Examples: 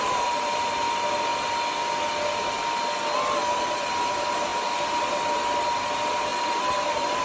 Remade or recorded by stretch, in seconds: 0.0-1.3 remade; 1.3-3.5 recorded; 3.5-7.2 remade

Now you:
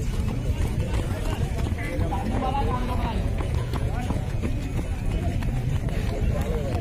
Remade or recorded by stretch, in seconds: 0.0-2.2 recorded; 2.2-4.4 remade; 4.4-6.8 recorded

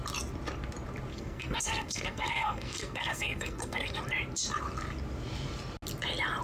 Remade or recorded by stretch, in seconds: 0.0-1.1 recorded; 1.1-4.0 remade; 4.0-6.4 recorded

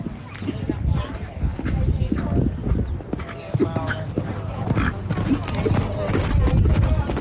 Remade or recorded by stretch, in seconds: 0.0-7.2 recorded

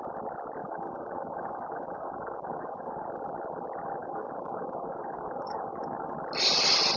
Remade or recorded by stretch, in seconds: 0.0-0.6 recorded; 0.6-3.1 remade; 3.1-4.0 recorded; 4.0-6.1 remade; 6.1-7.0 recorded

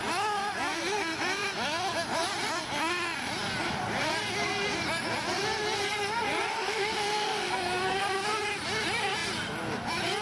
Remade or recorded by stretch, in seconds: 0.0-6.5 recorded; 6.5-7.5 remade; 7.5-10.2 recorded

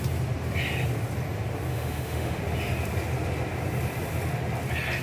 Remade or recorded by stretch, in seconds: 0.0-1.7 recorded; 1.7-2.4 remade; 2.4-5.0 recorded

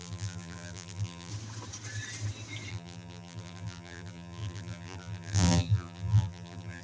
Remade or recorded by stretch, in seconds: 0.0-1.3 remade; 1.3-2.7 recorded; 2.7-6.8 remade